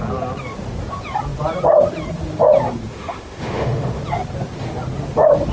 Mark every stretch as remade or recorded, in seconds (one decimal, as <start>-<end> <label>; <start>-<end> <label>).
0.0-2.9 recorded; 2.9-4.0 remade; 4.0-5.5 recorded